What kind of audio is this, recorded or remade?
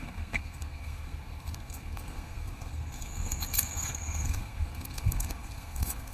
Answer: remade